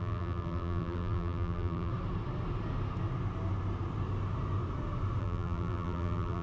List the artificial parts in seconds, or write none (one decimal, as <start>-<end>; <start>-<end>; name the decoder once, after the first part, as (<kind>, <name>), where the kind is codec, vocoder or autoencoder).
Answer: 0.0-1.9 (vocoder, BigVGAN v2); 5.2-6.4